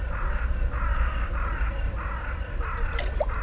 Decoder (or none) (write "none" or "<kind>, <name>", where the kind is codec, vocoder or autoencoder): none